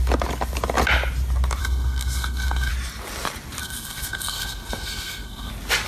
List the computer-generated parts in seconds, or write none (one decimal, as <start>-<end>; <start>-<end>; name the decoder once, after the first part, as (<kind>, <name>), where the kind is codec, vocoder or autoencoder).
1.6-2.7 (codec, SNAC); 3.6-5.5